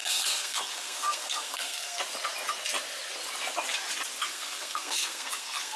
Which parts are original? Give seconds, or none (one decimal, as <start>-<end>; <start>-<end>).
2.0-4.3

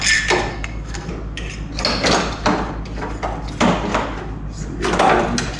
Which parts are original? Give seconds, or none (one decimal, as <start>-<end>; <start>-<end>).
0.0-0.5; 1.1-5.6